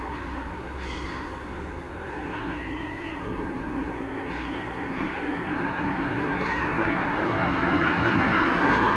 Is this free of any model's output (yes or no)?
no